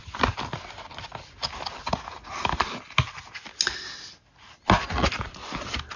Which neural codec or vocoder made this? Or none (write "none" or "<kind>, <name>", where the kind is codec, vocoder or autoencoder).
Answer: none